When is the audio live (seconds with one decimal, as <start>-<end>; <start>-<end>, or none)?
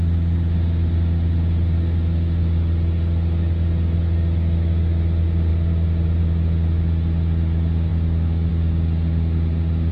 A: 0.0-9.9